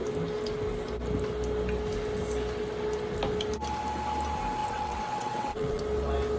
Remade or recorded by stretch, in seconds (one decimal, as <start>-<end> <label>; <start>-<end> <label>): 0.0-4.6 recorded; 4.6-5.8 remade; 5.8-6.4 recorded